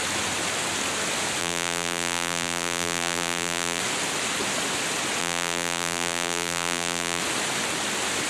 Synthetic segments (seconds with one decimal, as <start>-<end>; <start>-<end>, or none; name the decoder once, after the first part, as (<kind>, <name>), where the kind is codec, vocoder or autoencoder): 1.4-3.8 (vocoder, BigVGAN v2); 5.2-7.2